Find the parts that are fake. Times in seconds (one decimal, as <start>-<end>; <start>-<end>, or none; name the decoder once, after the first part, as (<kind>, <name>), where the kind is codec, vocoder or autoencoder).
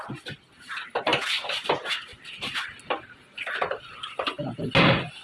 none